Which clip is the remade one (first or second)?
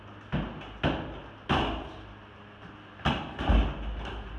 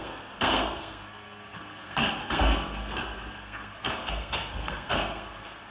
second